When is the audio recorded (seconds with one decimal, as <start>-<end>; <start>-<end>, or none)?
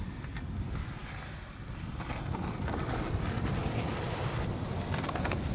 0.0-5.5